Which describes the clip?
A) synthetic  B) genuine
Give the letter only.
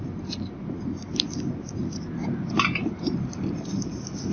B